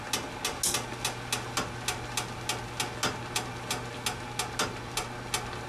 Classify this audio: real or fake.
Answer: real